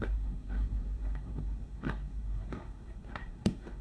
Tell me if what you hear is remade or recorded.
remade